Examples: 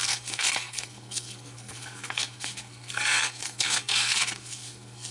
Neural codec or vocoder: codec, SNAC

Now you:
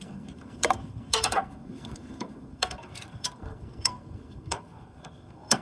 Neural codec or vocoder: codec, SNAC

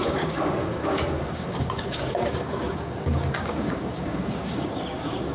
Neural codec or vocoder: codec, DAC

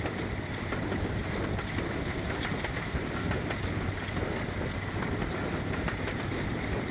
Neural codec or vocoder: none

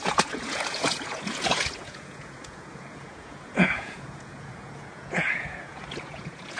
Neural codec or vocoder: vocoder, Vocos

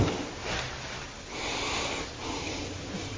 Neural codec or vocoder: none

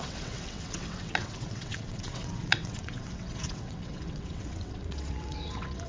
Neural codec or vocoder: vocoder, WaveNeXt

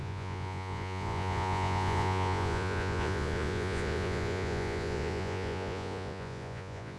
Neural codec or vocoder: vocoder, Vocos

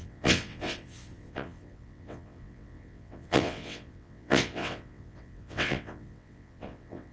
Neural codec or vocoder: vocoder, WaveNeXt